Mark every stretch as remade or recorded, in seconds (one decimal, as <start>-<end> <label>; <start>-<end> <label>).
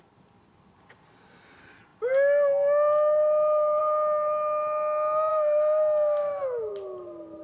0.0-5.3 recorded; 5.3-6.7 remade; 6.7-7.4 recorded